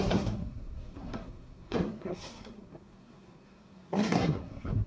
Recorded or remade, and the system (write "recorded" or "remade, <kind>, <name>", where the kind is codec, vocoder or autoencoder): remade, codec, SNAC